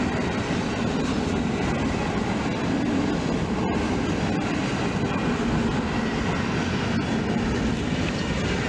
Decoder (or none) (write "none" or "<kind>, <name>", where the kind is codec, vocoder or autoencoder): none